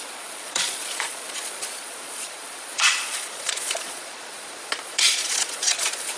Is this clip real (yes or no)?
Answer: no